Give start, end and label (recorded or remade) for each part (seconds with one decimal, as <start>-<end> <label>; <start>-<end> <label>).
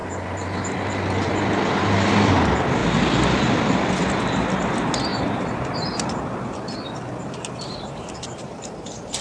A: 0.0-5.1 recorded; 5.1-5.7 remade; 5.7-7.2 recorded; 7.2-9.2 remade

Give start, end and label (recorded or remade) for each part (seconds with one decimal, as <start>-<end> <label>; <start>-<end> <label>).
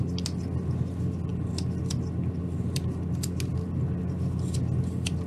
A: 0.0-5.3 recorded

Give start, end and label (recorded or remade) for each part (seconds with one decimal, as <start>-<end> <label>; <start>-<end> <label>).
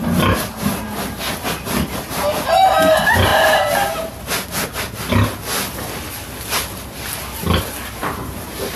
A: 0.0-8.0 recorded; 8.0-8.8 remade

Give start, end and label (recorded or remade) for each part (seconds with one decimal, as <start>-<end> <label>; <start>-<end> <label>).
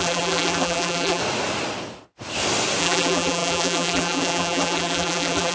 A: 0.0-1.2 remade; 1.2-2.8 recorded; 2.8-5.5 remade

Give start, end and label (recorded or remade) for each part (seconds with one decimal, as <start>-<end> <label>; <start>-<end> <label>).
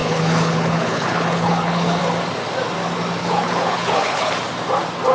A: 0.0-2.0 remade; 2.0-3.2 recorded; 3.2-4.3 remade; 4.3-5.1 recorded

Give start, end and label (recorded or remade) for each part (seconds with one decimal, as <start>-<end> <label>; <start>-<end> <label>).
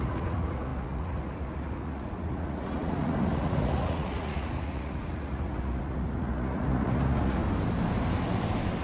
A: 0.0-7.4 remade; 7.4-8.8 recorded